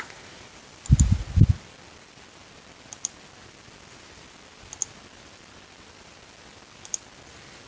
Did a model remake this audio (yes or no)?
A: no